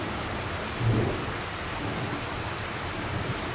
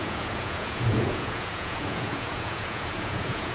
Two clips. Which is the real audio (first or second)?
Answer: first